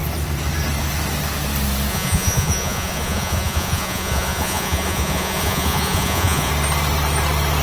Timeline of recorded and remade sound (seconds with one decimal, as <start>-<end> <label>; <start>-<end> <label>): 0.0-1.9 recorded; 1.9-6.5 remade; 6.5-7.6 recorded

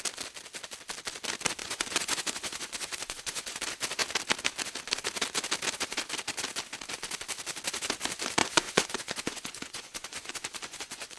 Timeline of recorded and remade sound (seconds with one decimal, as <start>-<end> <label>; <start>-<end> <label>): 0.0-1.6 recorded; 1.6-3.6 remade; 3.6-8.4 recorded; 8.4-11.2 remade

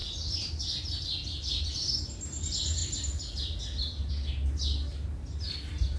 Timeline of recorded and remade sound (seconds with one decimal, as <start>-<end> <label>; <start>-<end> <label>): 0.0-6.0 recorded